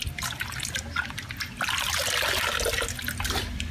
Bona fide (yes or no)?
yes